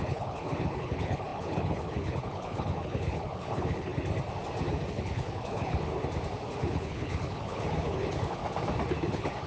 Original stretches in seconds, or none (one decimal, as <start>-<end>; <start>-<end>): 3.9-4.9; 5.9-6.6; 8.4-9.1